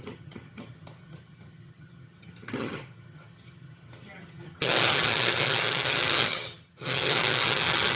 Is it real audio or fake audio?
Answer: fake